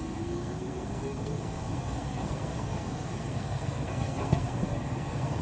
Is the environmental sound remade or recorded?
remade